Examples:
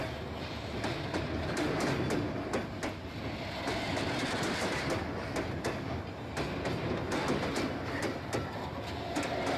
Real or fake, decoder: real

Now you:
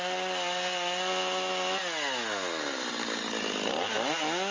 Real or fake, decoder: real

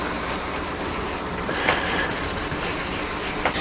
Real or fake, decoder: real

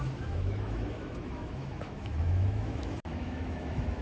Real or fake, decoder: fake, autoencoder, DAC-VAE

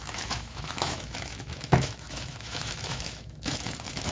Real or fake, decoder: fake, autoencoder, DAC-VAE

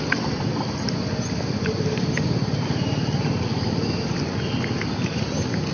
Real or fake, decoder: real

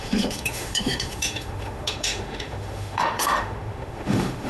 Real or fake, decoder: fake, autoencoder, DAC-VAE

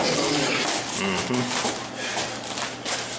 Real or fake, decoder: real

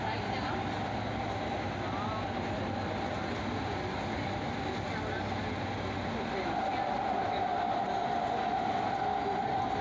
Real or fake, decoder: real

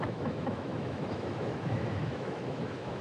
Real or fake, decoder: fake, autoencoder, DAC-VAE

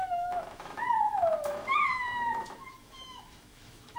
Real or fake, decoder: fake, autoencoder, DAC-VAE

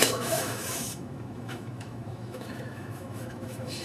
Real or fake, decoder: fake, autoencoder, DAC-VAE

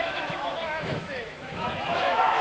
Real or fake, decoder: fake, autoencoder, DAC-VAE